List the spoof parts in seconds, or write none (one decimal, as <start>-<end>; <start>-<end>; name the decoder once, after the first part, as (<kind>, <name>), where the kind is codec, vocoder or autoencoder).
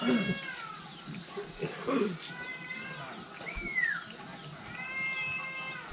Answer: none